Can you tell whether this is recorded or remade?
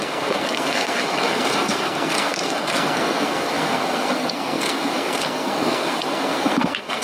remade